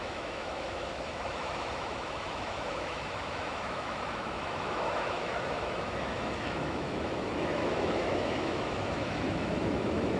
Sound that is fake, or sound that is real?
fake